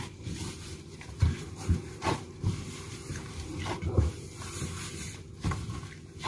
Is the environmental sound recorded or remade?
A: remade